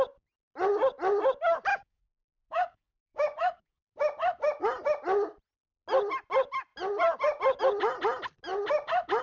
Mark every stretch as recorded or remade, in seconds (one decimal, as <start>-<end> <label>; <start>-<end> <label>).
0.0-1.7 recorded; 1.7-3.8 remade; 3.8-9.2 recorded